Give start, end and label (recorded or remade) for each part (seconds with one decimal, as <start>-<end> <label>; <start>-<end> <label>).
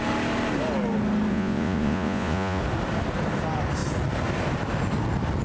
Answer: 0.0-1.3 recorded; 1.3-2.6 remade; 2.6-5.4 recorded